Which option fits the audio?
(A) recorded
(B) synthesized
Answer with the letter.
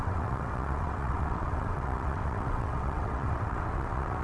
B